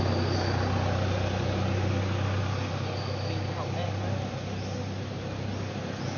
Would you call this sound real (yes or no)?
yes